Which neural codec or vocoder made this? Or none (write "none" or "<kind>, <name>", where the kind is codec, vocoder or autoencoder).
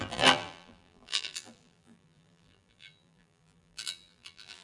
vocoder, BigVGAN v2